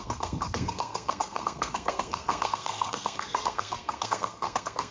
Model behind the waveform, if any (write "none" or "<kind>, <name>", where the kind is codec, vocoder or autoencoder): codec, SNAC